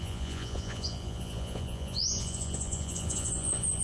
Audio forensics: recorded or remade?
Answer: remade